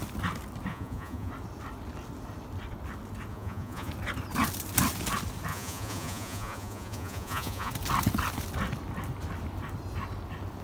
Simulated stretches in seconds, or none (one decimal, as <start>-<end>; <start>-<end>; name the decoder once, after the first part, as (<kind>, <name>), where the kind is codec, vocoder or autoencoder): 0.7-1.3 (vocoder, Vocos); 3.3-3.9; 5.5-7.7